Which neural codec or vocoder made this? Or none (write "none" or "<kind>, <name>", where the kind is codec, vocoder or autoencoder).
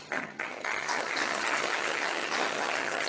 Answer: vocoder, HiFi-GAN